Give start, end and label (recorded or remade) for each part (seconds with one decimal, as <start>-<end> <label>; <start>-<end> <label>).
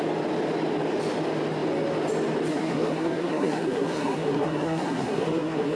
0.0-2.5 recorded; 2.5-5.8 remade